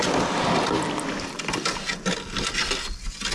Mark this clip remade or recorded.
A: recorded